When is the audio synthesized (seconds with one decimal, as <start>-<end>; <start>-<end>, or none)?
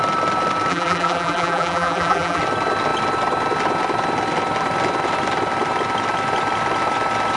0.7-2.4